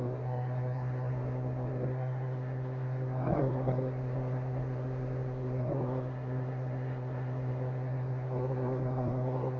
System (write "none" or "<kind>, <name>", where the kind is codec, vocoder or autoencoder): codec, SNAC